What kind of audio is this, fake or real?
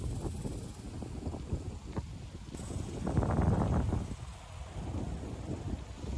real